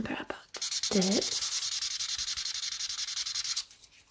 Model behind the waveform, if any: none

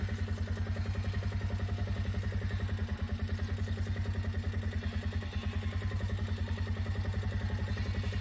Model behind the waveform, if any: none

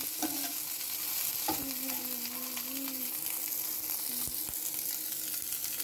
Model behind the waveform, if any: none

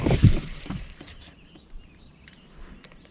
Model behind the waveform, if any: vocoder, BigVGAN v2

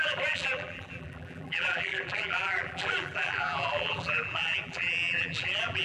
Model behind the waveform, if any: vocoder, BigVGAN v2